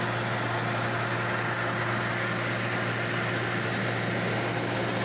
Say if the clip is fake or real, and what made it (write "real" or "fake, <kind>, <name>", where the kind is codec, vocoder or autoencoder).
real